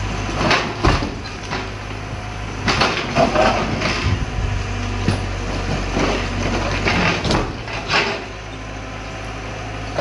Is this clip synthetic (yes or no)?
no